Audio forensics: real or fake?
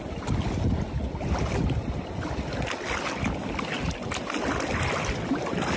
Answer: real